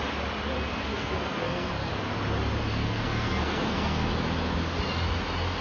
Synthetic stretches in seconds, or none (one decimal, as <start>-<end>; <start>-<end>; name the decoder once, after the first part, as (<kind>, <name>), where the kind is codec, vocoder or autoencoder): 0.9-1.9 (codec, SNAC); 2.8-4.1